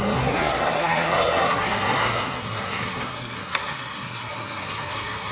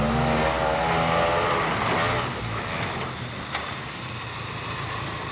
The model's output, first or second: first